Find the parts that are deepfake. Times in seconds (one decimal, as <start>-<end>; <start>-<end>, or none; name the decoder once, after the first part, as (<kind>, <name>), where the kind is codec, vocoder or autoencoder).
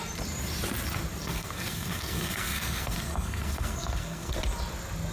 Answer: 1.2-4.3 (codec, SNAC)